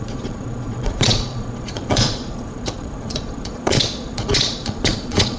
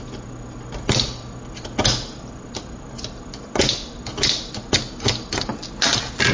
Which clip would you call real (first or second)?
second